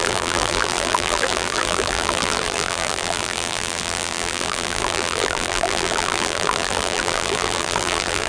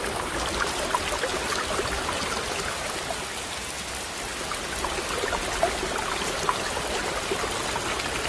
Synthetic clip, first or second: first